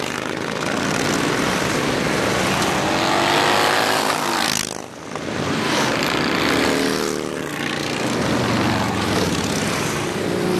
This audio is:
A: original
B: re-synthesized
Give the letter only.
A